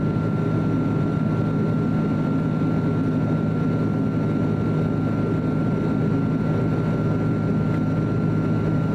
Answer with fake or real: real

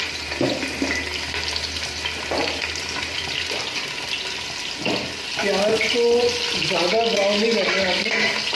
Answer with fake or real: real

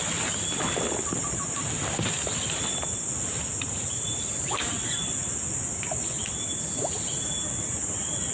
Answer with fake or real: real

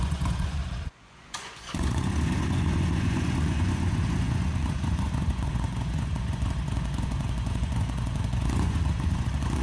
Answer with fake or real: fake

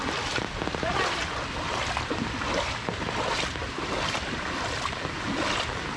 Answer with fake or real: real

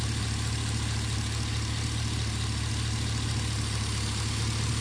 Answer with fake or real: real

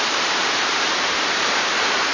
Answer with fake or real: fake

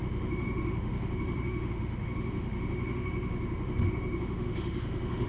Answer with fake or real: fake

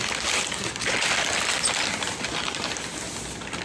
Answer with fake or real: real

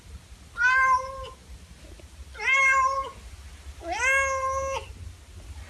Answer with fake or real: real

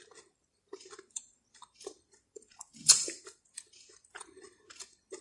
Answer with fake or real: fake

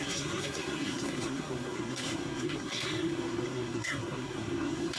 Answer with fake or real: fake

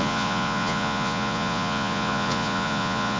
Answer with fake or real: fake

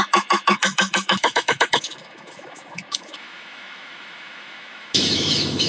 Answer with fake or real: fake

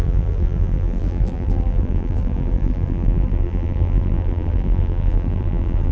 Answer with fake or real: fake